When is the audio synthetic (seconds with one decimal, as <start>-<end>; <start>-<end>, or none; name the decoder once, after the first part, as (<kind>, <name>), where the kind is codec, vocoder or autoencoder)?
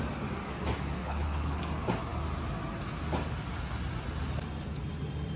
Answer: 1.0-1.6 (codec, HILCodec)